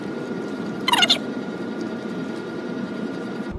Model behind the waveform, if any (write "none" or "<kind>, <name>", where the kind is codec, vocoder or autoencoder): vocoder, BigVGAN v2